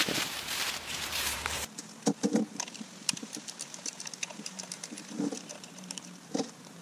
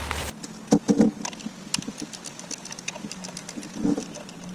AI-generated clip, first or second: first